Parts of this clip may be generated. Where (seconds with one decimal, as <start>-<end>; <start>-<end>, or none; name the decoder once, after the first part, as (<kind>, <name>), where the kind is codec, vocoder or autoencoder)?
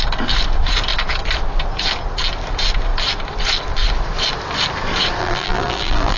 5.2-6.2 (vocoder, BigVGAN v2)